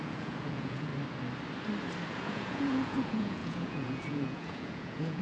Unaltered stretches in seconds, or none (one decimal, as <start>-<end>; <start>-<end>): 0.9-2.1